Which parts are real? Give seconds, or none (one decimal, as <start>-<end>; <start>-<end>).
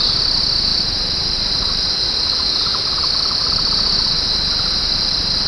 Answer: 0.0-0.7; 2.1-5.5